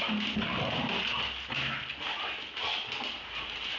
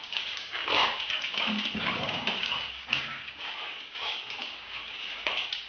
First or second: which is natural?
first